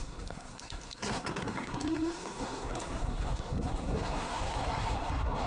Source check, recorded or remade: remade